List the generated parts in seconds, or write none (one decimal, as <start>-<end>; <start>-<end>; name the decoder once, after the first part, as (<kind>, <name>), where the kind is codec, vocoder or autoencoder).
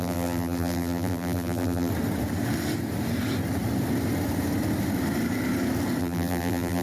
0.0-1.9 (vocoder, BigVGAN v2); 6.0-6.8